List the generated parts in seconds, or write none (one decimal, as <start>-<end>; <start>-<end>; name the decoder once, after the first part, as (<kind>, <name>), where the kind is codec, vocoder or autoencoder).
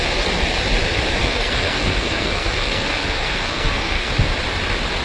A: 1.2-4.1 (codec, SNAC)